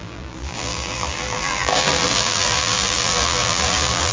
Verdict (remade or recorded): remade